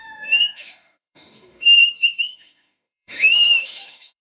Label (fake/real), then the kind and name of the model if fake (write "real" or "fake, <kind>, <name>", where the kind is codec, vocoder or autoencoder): fake, autoencoder, DAC-VAE